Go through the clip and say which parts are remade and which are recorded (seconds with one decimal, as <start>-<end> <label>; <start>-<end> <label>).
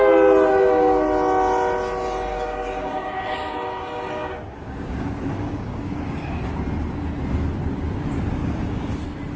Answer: 0.0-2.3 recorded; 2.3-6.4 remade; 6.4-8.4 recorded; 8.4-9.0 remade; 9.0-9.4 recorded